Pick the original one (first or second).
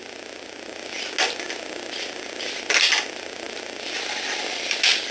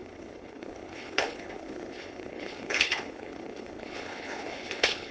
first